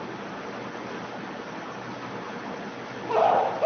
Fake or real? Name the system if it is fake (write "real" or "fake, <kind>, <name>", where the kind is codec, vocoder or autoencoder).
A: real